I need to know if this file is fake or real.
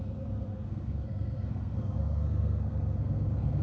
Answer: fake